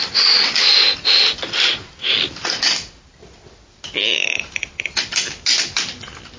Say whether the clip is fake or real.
real